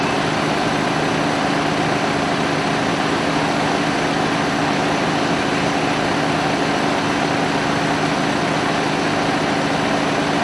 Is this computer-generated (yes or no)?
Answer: no